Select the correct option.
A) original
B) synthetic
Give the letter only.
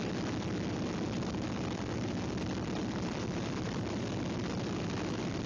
A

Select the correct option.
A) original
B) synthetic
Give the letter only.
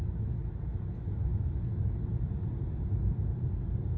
A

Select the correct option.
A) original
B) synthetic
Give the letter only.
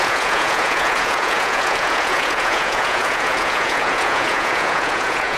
B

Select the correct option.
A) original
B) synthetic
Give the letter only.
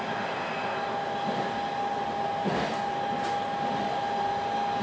A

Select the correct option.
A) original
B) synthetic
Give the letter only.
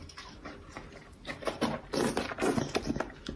A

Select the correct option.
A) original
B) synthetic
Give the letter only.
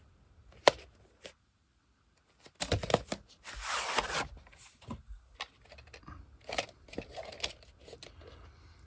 A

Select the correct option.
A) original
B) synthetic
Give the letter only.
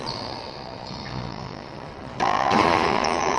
B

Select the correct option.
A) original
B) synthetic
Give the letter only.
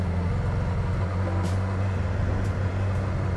A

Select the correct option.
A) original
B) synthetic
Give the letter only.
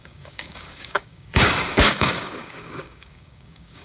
B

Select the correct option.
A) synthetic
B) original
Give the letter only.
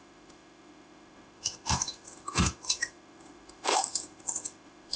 A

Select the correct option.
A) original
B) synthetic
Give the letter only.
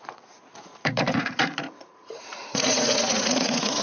B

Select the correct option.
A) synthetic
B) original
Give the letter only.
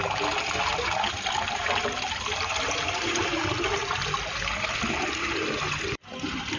B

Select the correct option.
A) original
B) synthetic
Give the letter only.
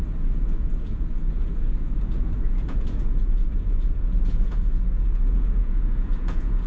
B